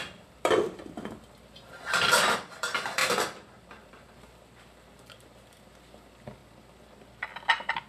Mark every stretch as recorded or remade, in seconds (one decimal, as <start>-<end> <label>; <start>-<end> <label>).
0.0-6.4 remade; 6.4-7.9 recorded